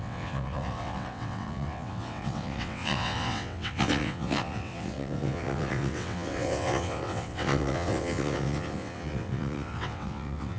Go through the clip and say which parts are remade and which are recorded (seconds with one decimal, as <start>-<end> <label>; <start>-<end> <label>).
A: 0.0-10.6 remade